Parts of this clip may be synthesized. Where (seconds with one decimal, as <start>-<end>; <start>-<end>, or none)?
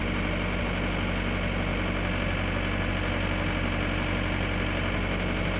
none